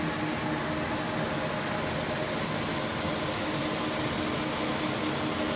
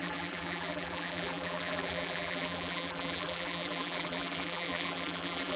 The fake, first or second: second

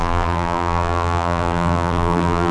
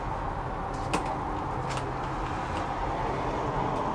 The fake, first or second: first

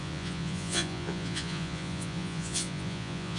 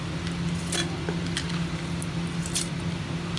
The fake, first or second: first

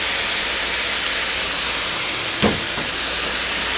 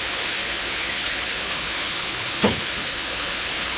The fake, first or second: second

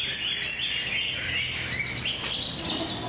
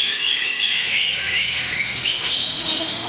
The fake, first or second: second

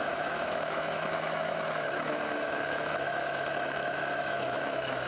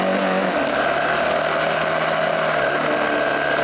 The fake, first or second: first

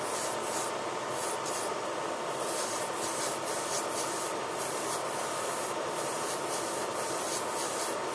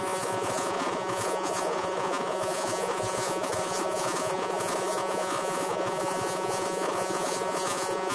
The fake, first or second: second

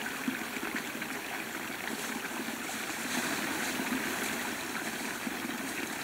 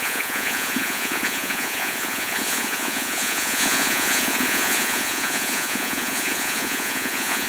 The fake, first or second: second